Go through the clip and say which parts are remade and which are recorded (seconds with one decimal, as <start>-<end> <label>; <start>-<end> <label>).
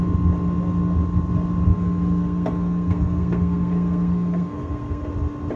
0.0-1.7 recorded; 1.7-5.1 remade; 5.1-5.6 recorded